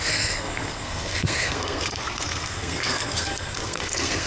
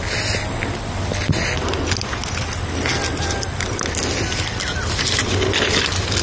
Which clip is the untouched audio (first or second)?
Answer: second